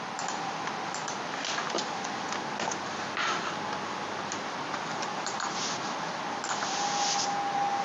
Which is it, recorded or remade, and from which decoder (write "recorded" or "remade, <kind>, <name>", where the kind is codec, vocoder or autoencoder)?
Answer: recorded